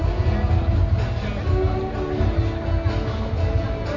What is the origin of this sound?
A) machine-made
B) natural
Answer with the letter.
B